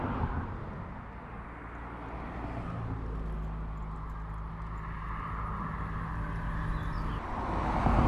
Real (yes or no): yes